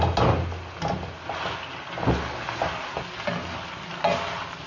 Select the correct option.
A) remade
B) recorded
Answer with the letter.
B